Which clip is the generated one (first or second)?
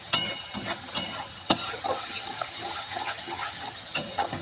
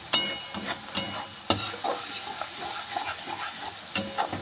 first